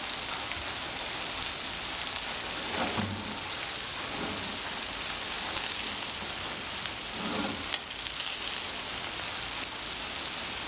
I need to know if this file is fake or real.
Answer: real